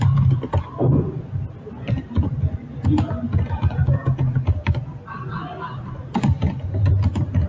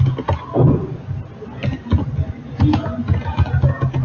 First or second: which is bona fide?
second